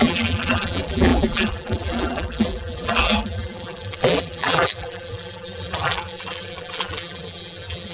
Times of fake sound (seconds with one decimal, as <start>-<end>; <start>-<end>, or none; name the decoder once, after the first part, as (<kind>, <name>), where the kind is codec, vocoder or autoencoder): 0.0-7.9 (vocoder, BigVGAN v2)